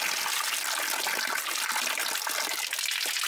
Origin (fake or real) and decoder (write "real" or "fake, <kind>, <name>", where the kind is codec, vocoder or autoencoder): real